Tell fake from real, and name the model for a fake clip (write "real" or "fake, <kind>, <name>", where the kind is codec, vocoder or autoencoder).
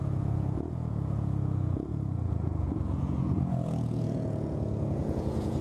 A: fake, vocoder, Vocos